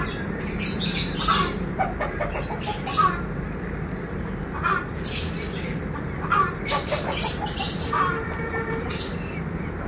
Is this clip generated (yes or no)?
yes